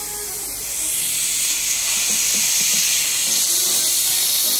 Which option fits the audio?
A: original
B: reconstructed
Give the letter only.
A